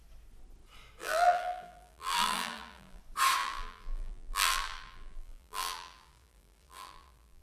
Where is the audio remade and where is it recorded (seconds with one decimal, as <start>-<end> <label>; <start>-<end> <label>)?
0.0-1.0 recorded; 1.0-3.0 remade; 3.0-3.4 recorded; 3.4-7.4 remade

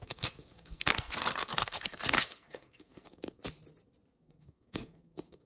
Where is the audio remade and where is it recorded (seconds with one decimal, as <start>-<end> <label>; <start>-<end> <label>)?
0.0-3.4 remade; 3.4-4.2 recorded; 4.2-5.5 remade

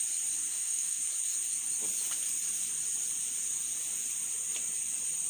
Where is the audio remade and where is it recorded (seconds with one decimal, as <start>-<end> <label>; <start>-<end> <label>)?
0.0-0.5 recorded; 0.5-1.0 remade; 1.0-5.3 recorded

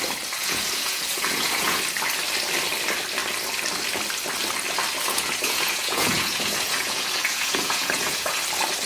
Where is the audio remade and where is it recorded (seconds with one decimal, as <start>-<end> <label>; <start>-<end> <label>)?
0.0-0.4 recorded; 0.4-1.8 remade; 1.8-5.1 recorded; 5.1-8.4 remade; 8.4-8.9 recorded

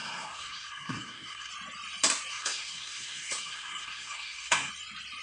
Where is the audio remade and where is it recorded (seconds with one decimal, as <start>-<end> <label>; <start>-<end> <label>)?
0.0-1.5 remade; 1.5-2.3 recorded; 2.3-4.7 remade; 4.7-5.2 recorded

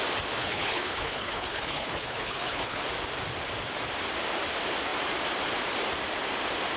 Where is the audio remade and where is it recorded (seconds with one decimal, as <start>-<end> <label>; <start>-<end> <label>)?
0.0-0.4 recorded; 0.4-2.8 remade; 2.8-6.8 recorded

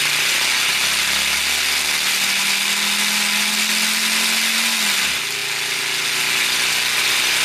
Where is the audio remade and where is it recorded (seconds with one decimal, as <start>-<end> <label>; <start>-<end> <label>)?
0.0-7.4 recorded